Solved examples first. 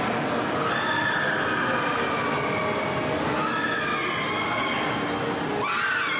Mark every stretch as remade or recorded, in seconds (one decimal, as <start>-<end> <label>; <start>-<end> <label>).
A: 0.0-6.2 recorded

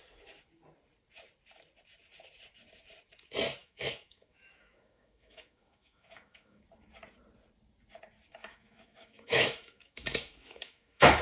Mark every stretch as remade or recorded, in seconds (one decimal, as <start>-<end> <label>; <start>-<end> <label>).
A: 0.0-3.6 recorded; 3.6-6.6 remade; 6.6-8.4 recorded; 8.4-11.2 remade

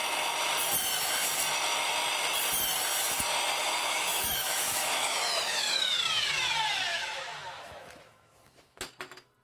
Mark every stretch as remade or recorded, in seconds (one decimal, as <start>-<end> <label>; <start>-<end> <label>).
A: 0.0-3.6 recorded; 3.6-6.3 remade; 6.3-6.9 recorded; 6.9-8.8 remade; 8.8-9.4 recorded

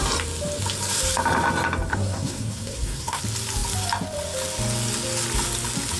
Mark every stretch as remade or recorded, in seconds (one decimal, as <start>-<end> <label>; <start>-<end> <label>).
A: 0.0-1.9 recorded; 1.9-3.2 remade; 3.2-6.0 recorded

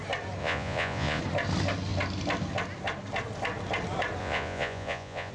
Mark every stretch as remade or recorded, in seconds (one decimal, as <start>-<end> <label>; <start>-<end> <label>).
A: 0.0-0.4 recorded; 0.4-1.2 remade; 1.2-4.2 recorded; 4.2-5.3 remade

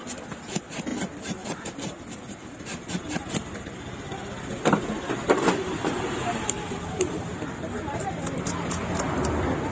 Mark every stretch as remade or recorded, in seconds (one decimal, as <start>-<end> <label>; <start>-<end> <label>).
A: 0.0-9.7 recorded

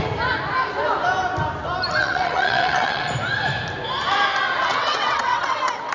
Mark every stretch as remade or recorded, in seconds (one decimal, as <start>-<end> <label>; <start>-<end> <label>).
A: 0.0-2.0 recorded; 2.0-3.1 remade; 3.1-4.7 recorded; 4.7-5.9 remade